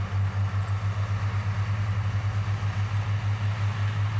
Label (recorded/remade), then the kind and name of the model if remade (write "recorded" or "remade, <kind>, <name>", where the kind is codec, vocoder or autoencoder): recorded